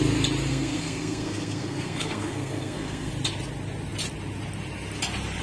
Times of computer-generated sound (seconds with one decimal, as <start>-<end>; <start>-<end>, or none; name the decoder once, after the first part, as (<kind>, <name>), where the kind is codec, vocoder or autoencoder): 0.5-3.1 (codec, SNAC)

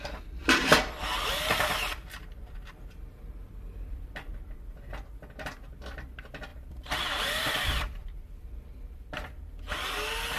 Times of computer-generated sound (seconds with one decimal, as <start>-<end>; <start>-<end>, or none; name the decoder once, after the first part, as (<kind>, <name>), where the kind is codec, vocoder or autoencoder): 0.4-5.0 (vocoder, BigVGAN v2); 6.5-9.1

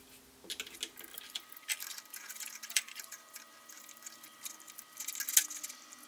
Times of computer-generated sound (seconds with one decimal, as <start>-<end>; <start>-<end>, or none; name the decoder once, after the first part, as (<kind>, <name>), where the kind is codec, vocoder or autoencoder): 1.1-4.8 (vocoder, BigVGAN v2)

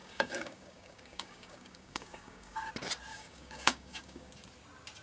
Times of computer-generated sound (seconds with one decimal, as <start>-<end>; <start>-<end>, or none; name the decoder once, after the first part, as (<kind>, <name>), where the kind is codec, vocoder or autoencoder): 0.0-2.7 (codec, DAC); 3.1-4.3

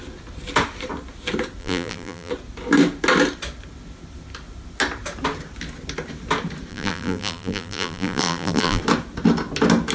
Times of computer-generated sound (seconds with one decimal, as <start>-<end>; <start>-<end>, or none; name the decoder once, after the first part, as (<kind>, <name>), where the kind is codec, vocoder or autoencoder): 1.6-2.3 (vocoder, BigVGAN v2); 6.7-8.8